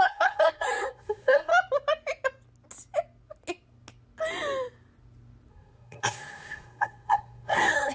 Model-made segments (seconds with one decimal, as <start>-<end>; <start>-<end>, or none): 0.0-1.5; 5.5-7.9